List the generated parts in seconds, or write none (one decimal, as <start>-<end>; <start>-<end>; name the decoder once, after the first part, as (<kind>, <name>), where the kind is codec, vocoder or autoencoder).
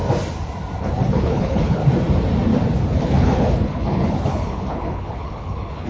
0.8-1.8 (codec, HILCodec); 3.0-5.9